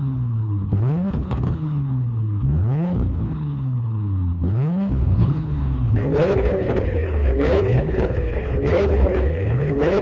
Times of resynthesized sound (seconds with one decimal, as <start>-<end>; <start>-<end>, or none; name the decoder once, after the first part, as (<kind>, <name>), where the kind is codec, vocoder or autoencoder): 0.0-10.0 (codec, HILCodec)